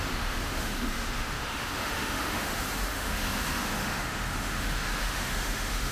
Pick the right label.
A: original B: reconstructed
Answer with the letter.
B